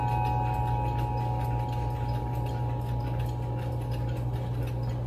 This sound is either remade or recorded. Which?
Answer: recorded